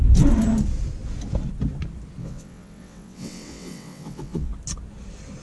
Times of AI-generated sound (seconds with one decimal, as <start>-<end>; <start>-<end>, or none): 2.2-4.5